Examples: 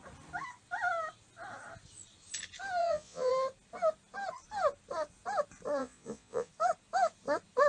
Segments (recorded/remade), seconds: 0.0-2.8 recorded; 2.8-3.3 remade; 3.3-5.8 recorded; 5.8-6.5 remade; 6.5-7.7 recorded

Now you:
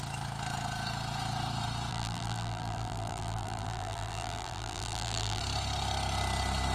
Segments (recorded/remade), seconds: 0.0-1.9 recorded; 1.9-5.4 remade; 5.4-6.7 recorded

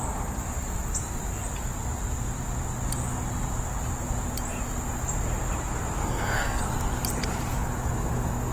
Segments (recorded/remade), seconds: 0.0-6.0 recorded; 6.0-6.6 remade; 6.6-8.5 recorded

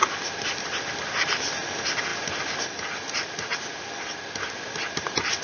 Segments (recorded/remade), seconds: 0.0-5.4 recorded

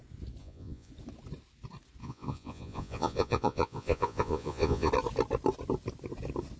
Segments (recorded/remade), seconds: 0.0-0.4 recorded; 0.4-0.9 remade; 0.9-2.0 recorded; 2.0-4.9 remade; 4.9-6.6 recorded

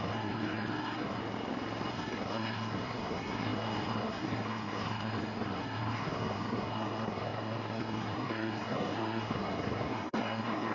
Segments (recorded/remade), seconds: 0.0-1.2 remade; 1.2-1.9 recorded; 1.9-10.7 remade

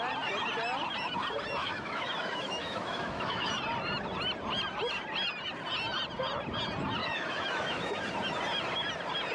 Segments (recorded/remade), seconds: 0.0-1.6 recorded; 1.6-3.5 remade; 3.5-7.0 recorded; 7.0-8.1 remade; 8.1-9.3 recorded

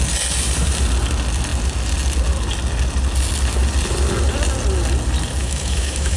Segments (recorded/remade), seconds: 0.0-5.4 recorded; 5.4-6.2 remade